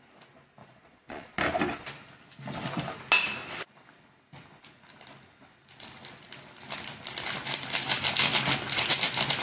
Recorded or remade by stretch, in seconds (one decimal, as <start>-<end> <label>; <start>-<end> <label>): 0.0-0.6 recorded; 0.6-1.4 remade; 1.4-9.4 recorded